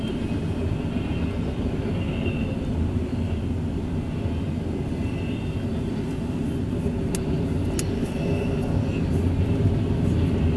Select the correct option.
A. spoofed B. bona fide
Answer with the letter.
B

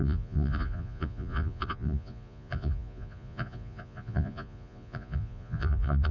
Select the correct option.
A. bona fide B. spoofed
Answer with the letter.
B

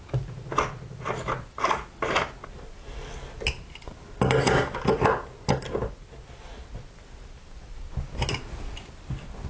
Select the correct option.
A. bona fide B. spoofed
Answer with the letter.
A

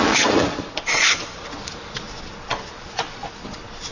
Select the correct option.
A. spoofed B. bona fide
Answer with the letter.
A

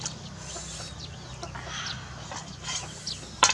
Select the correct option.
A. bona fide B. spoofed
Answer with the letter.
A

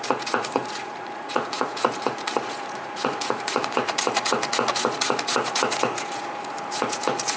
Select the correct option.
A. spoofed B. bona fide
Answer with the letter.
A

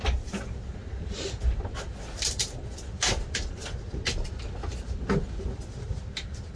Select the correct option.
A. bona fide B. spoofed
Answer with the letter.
A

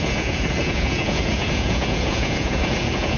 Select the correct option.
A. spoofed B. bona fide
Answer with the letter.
A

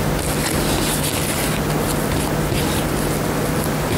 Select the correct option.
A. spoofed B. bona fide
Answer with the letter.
B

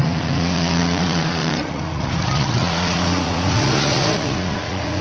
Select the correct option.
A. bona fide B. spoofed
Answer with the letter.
B